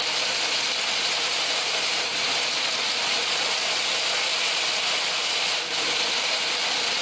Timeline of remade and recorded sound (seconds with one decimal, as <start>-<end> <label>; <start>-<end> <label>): 0.0-2.1 remade; 2.1-3.9 recorded; 3.9-7.0 remade